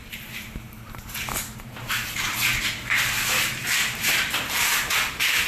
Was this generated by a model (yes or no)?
yes